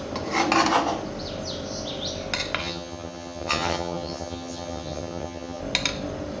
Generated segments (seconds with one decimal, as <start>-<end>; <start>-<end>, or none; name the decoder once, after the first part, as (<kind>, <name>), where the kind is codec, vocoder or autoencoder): 2.6-5.6 (vocoder, HiFi-GAN)